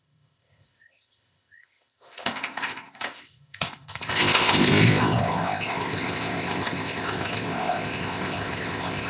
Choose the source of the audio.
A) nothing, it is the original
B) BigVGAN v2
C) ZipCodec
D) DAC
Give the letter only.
C